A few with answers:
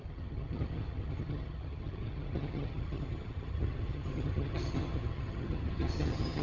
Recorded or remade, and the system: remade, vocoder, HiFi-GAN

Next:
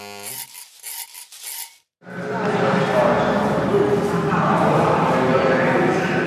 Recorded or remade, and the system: recorded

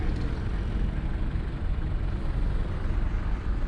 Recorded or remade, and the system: remade, vocoder, BigVGAN v2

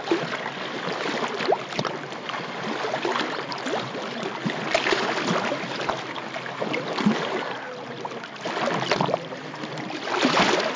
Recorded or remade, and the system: recorded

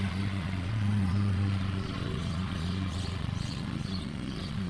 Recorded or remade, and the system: remade, vocoder, Vocos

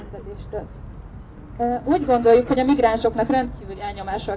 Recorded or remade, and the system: recorded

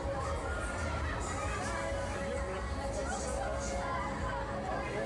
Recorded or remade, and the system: recorded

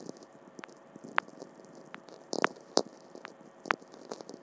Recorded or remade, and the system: remade, vocoder, BigVGAN v2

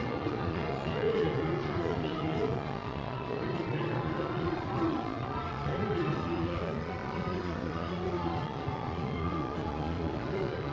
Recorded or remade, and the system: remade, vocoder, Vocos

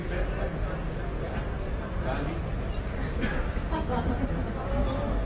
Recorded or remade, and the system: recorded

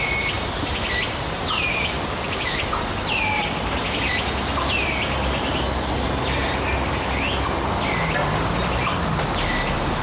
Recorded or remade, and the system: recorded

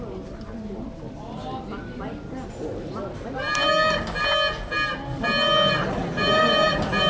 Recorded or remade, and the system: recorded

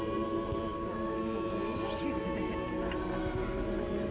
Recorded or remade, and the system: recorded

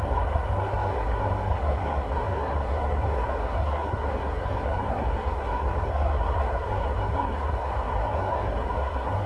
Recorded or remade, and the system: remade, codec, SNAC